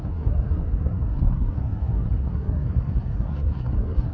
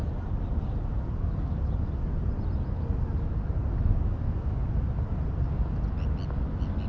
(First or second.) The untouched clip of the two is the second